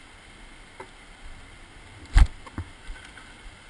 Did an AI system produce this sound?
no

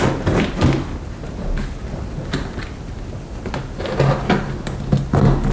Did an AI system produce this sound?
no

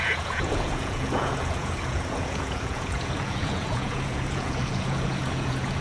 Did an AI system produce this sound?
yes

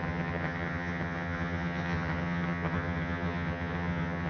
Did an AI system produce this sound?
yes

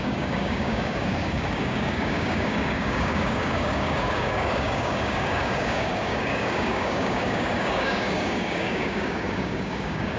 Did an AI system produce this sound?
yes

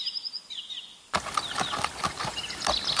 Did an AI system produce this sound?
no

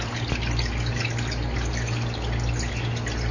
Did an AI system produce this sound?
no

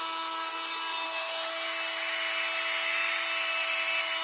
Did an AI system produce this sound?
no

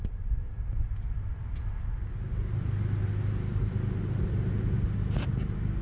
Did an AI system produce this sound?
no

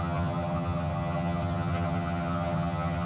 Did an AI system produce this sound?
yes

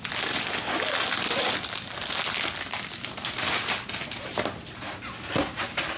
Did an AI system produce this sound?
no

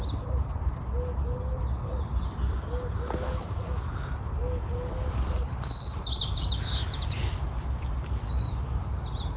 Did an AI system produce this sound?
no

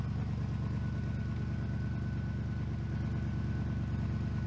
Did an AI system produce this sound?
no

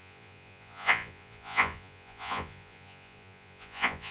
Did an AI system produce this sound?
yes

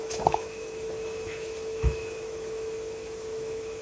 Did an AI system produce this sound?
yes